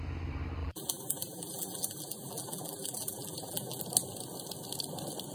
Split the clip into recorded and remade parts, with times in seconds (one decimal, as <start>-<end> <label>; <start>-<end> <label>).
0.0-0.6 recorded; 0.6-3.8 remade; 3.8-5.3 recorded